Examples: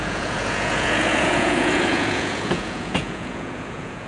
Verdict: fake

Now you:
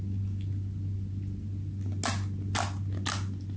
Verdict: real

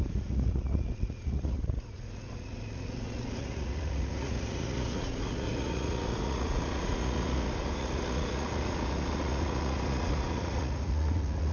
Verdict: fake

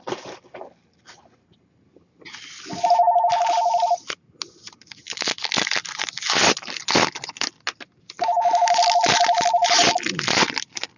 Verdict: real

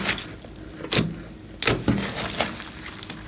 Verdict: real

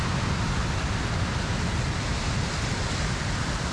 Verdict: real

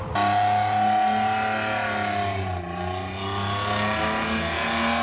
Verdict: real